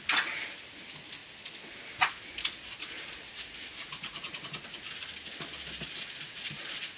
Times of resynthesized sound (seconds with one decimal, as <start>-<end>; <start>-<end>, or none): none